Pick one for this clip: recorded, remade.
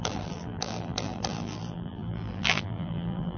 remade